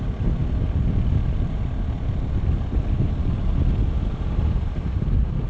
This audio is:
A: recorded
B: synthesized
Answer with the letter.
A